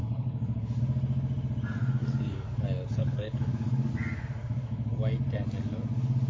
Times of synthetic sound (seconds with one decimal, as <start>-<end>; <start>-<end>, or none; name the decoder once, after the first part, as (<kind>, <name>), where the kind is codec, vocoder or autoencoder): 0.0-0.8 (codec, DAC); 2.0-2.6; 3.0-3.9; 4.4-4.9